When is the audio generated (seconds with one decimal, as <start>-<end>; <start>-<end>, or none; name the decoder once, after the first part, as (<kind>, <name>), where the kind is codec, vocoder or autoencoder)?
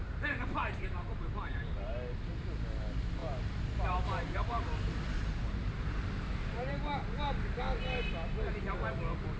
0.0-1.9 (vocoder, BigVGAN v2); 3.2-7.8